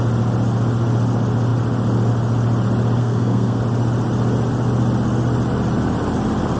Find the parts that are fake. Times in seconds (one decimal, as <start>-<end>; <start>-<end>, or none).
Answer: 3.0-3.6